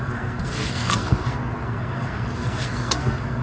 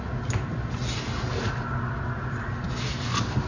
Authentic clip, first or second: second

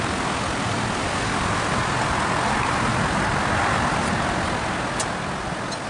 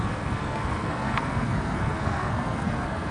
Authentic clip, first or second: first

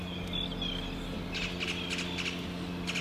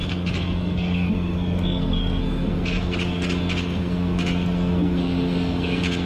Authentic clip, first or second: first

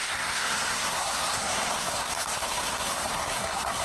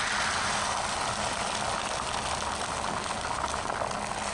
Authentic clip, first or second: second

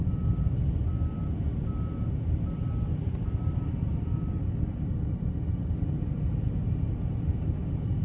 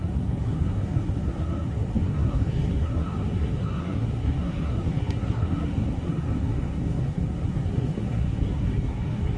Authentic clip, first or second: first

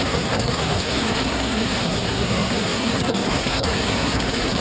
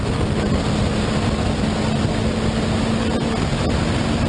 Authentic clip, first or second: second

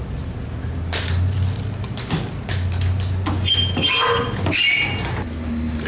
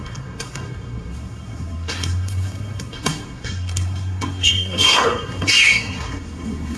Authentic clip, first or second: first